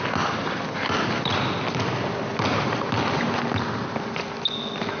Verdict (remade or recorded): recorded